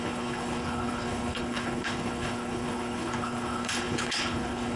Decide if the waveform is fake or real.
fake